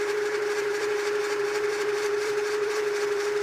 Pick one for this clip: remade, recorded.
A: remade